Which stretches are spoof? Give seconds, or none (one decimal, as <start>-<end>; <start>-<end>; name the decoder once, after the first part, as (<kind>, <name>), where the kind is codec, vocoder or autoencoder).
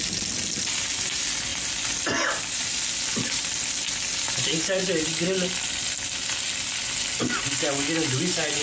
none